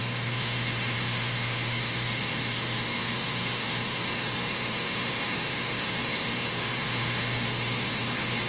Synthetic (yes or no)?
yes